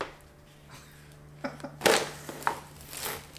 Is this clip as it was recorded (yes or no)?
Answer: yes